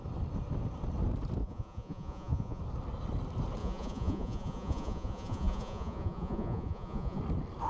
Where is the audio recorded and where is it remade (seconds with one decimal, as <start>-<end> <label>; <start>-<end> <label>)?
0.0-1.4 recorded; 1.4-2.6 remade; 2.6-3.6 recorded; 3.6-7.2 remade; 7.2-7.7 recorded